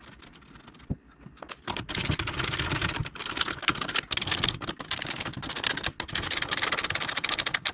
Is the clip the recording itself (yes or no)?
yes